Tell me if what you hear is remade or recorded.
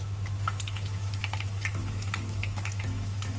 remade